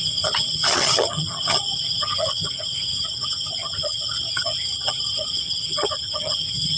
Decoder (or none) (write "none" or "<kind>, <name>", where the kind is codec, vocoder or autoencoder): vocoder, HiFi-GAN